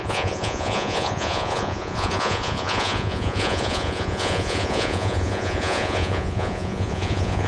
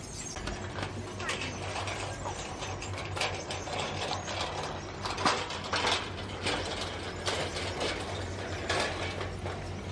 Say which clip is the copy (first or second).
first